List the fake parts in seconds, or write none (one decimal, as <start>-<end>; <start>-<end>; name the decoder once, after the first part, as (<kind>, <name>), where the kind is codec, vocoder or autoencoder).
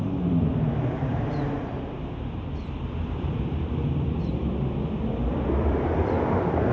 0.0-6.7 (vocoder, BigVGAN v2)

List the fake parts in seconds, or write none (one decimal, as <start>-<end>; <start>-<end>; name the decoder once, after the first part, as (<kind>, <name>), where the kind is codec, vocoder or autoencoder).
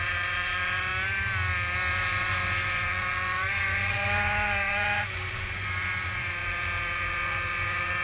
0.0-0.9 (vocoder, Vocos); 1.9-8.0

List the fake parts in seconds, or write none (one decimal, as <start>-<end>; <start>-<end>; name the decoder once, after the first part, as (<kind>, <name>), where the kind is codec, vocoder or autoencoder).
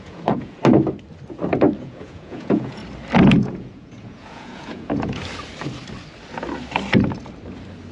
0.0-0.6 (vocoder, Vocos); 1.8-2.8; 3.4-5.2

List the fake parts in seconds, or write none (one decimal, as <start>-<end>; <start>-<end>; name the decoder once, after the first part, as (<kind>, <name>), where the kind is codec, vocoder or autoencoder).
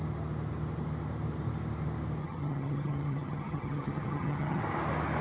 2.2-4.6 (vocoder, HiFi-GAN)